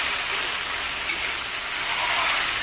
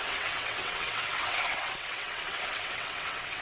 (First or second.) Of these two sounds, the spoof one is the second